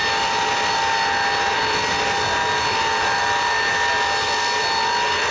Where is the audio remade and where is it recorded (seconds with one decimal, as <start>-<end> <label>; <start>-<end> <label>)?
0.0-5.3 recorded